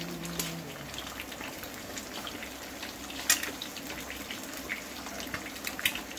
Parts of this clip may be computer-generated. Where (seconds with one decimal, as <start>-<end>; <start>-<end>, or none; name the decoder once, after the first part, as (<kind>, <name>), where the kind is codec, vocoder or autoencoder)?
none